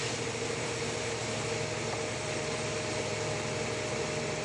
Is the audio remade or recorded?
recorded